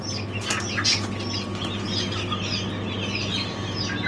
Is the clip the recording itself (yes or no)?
yes